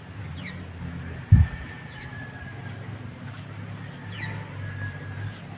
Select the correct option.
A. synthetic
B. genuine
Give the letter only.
B